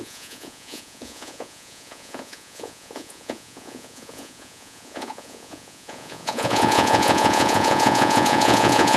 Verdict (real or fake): fake